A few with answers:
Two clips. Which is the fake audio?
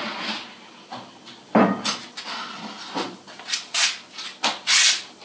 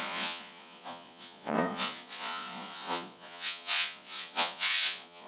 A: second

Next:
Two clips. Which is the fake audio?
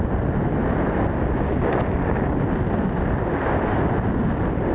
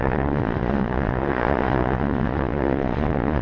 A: second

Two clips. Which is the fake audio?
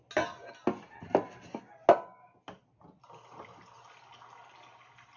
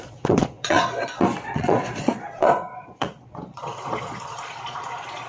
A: second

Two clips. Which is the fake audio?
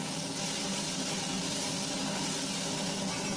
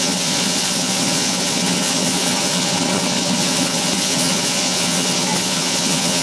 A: second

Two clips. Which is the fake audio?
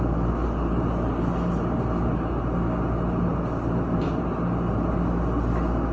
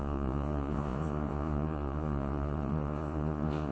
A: second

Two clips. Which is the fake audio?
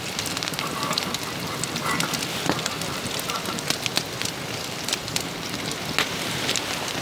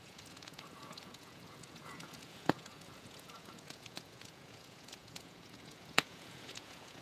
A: second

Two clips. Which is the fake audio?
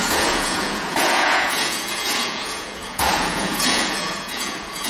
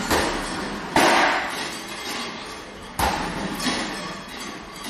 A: first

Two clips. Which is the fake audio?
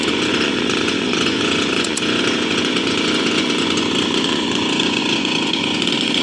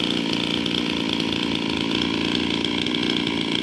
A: first